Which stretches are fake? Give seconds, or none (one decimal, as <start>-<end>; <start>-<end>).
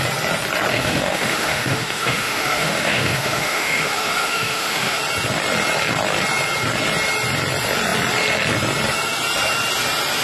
0.7-5.0